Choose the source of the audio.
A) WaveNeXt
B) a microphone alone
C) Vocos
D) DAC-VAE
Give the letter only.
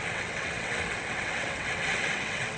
A